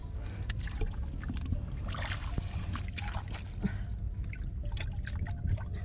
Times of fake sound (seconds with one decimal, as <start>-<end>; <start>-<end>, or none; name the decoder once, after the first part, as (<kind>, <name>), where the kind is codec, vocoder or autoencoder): none